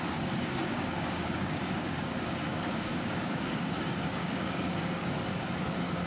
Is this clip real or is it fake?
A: fake